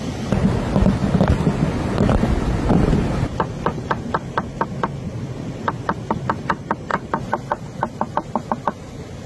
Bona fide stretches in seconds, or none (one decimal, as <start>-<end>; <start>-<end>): 0.0-9.3